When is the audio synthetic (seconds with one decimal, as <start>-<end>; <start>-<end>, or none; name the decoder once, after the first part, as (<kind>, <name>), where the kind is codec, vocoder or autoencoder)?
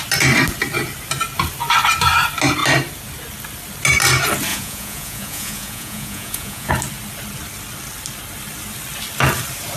4.5-6.7 (vocoder, Vocos)